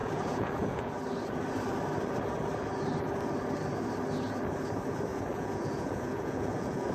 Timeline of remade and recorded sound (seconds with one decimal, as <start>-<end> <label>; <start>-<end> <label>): 0.0-0.9 remade; 0.9-5.1 recorded; 5.1-6.9 remade